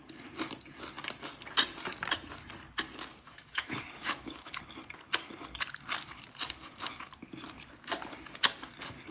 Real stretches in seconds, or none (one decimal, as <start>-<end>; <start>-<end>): 0.0-3.1; 4.6-9.1